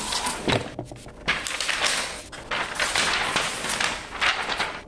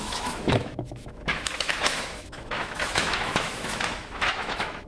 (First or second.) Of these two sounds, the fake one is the second